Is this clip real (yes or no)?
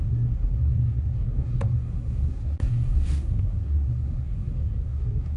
no